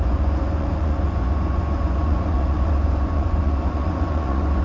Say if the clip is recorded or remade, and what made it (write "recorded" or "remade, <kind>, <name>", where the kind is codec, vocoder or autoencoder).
remade, vocoder, Vocos